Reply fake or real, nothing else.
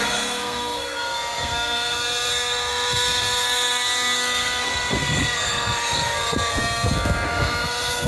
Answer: fake